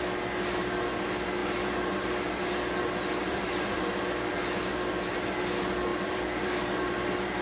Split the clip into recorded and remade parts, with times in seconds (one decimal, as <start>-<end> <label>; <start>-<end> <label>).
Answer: 0.0-3.2 recorded; 3.2-3.9 remade; 3.9-5.9 recorded; 5.9-6.9 remade; 6.9-7.4 recorded